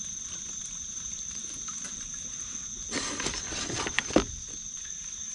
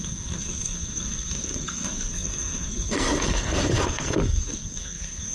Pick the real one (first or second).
first